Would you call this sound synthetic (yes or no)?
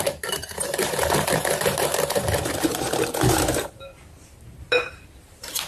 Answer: yes